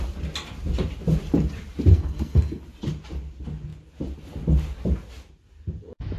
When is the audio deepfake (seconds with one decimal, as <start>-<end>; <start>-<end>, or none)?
1.9-2.6